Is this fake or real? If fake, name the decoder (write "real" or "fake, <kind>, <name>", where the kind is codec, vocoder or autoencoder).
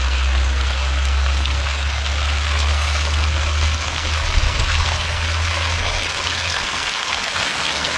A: fake, codec, SNAC